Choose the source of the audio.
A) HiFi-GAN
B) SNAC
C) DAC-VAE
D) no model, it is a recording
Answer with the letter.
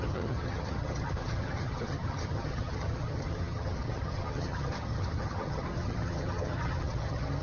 A